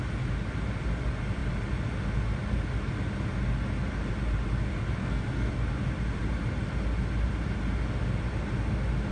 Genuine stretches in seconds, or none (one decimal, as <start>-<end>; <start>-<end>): 0.0-5.0; 5.5-9.1